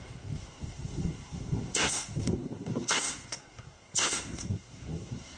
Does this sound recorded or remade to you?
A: remade